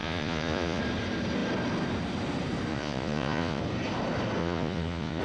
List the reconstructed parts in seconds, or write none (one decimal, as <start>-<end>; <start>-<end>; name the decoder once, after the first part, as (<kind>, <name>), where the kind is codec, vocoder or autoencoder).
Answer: 0.0-0.8 (vocoder, Vocos); 2.7-3.6; 4.4-5.2